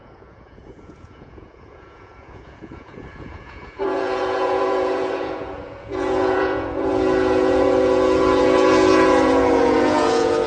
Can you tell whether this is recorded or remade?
remade